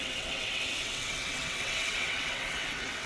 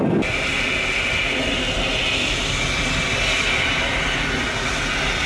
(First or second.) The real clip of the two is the second